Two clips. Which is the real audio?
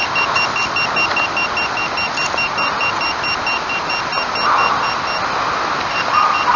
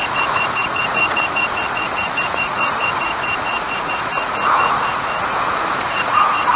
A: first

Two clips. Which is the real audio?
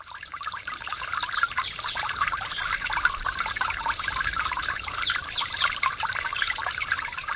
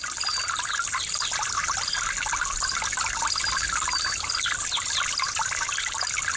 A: second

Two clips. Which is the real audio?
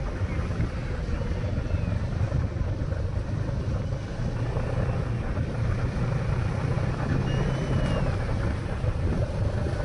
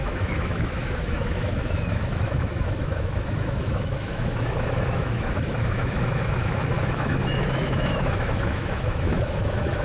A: first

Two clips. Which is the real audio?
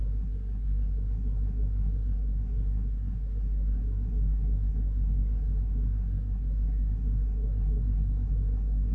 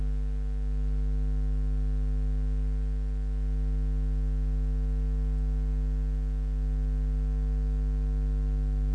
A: second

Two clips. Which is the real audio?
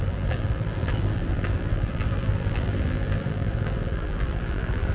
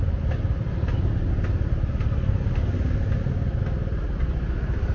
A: second